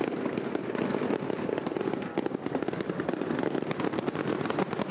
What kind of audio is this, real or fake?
real